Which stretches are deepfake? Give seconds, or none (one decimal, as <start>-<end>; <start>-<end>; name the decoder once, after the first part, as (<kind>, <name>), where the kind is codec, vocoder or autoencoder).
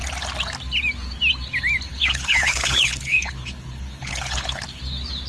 1.9-4.8 (codec, HILCodec)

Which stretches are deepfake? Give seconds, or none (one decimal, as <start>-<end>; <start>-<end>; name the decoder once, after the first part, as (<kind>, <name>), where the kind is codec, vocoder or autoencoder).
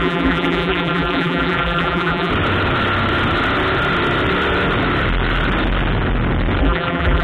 0.0-2.3 (vocoder, BigVGAN v2); 6.6-7.2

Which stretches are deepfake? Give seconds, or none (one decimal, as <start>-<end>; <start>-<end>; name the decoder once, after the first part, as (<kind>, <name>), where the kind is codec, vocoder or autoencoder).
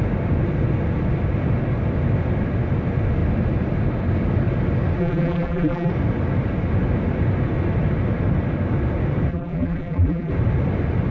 5.0-5.9 (vocoder, BigVGAN v2); 9.3-10.3